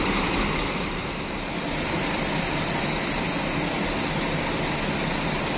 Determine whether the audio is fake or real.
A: real